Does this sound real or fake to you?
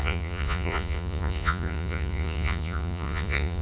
fake